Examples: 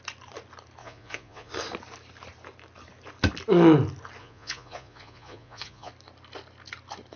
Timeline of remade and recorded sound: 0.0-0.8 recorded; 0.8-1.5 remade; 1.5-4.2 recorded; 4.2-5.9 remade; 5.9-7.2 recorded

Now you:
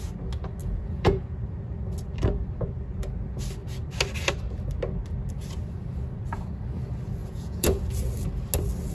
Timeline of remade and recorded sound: 0.0-0.6 recorded; 0.6-1.3 remade; 1.3-7.2 recorded; 7.2-7.8 remade; 7.8-8.9 recorded

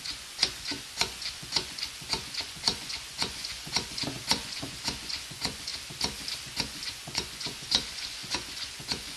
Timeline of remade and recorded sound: 0.0-5.7 remade; 5.7-6.4 recorded; 6.4-9.2 remade

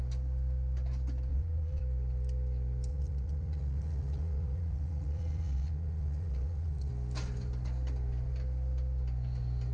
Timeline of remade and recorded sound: 0.0-1.3 recorded; 1.3-1.8 remade; 1.8-2.9 recorded; 2.9-6.9 remade; 6.9-9.7 recorded

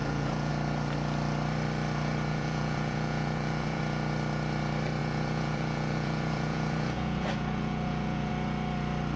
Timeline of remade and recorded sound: 0.0-0.5 remade; 0.5-2.3 recorded; 2.3-3.8 remade; 3.8-5.0 recorded; 5.0-8.3 remade; 8.3-9.2 recorded

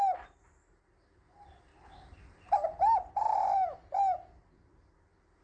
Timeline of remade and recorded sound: 0.0-5.4 recorded